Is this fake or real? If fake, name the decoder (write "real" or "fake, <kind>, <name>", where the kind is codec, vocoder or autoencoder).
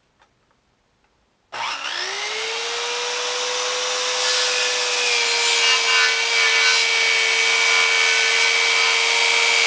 real